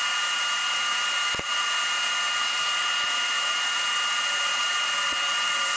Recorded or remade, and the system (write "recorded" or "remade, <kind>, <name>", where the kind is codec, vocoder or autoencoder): recorded